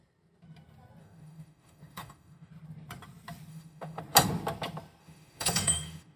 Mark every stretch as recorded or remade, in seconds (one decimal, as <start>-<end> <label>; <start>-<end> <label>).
0.0-1.0 recorded; 1.0-2.5 remade; 2.5-3.5 recorded; 3.5-4.0 remade; 4.0-5.0 recorded; 5.0-6.2 remade